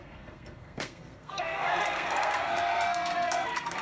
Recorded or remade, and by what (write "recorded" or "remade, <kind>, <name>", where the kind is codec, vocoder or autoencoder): remade, codec, SNAC